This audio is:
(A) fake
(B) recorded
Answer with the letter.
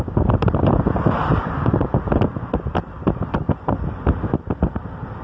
B